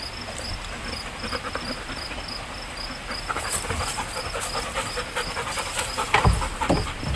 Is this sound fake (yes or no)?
no